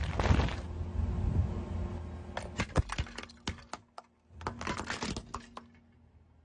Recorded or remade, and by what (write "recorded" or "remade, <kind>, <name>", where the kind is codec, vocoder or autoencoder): recorded